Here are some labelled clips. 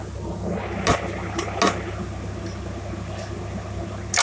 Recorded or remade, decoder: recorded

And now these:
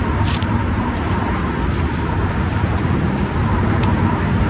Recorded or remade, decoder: remade, vocoder, BigVGAN v2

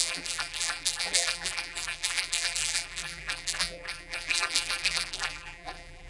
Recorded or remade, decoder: remade, vocoder, BigVGAN v2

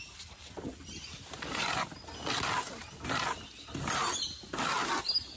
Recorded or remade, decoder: recorded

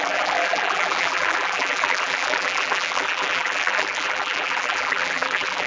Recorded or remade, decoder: remade, vocoder, BigVGAN v2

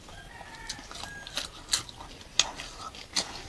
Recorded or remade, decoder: recorded